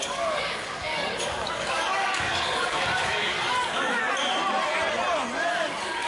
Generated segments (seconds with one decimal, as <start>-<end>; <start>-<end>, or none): 0.0-4.0; 5.5-6.1